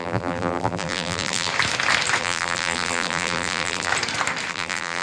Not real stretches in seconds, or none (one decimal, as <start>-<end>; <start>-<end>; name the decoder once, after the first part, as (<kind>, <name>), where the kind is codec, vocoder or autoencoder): 0.0-1.5 (vocoder, BigVGAN v2); 2.2-3.9; 4.5-5.0